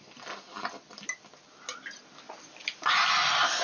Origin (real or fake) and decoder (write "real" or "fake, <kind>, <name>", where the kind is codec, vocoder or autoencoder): real